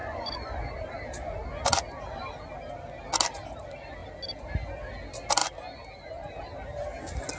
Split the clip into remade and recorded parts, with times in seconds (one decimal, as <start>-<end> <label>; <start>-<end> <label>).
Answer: 0.0-0.6 remade; 0.6-7.4 recorded